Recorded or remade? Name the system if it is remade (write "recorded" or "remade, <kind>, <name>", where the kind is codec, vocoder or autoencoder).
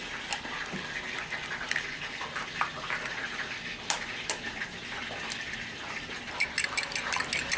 recorded